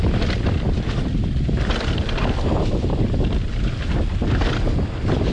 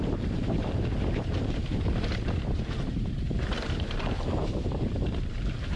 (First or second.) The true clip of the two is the first